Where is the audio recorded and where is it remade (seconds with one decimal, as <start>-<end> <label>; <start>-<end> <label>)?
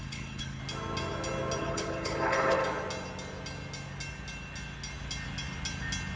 0.0-0.6 remade; 0.6-1.6 recorded; 1.6-2.6 remade; 2.6-6.2 recorded